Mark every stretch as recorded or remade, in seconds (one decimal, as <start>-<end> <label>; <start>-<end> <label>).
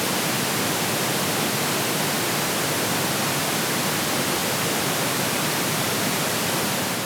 0.0-4.4 recorded; 4.4-6.4 remade; 6.4-7.1 recorded